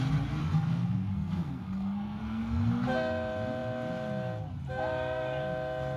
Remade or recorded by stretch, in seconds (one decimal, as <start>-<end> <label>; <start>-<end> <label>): 0.0-0.4 recorded; 0.4-2.7 remade; 2.7-6.0 recorded